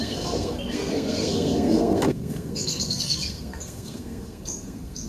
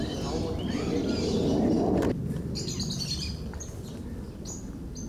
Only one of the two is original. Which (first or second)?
second